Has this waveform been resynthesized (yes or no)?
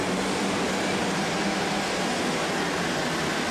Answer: no